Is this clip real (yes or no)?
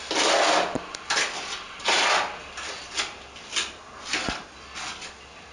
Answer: yes